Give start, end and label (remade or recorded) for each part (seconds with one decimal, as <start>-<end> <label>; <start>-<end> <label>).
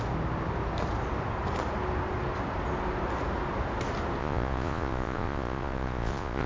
0.0-4.2 recorded; 4.2-6.5 remade